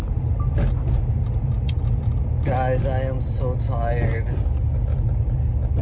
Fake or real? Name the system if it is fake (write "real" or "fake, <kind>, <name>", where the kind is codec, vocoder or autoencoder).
real